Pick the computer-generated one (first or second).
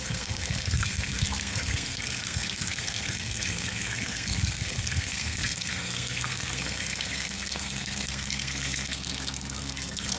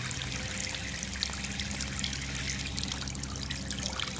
first